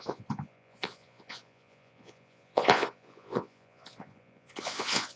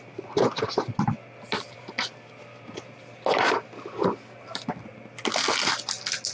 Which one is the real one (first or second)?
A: second